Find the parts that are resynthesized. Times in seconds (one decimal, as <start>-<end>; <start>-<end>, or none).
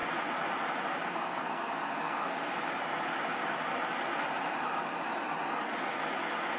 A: 1.1-2.4